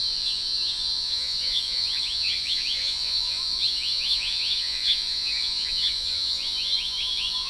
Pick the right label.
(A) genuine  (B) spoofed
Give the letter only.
B